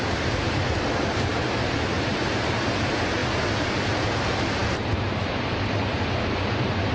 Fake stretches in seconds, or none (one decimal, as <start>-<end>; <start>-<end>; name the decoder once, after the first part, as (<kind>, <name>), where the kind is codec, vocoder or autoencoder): 0.0-3.2 (vocoder, BigVGAN v2); 3.8-6.9